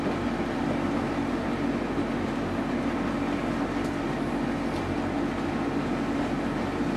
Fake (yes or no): no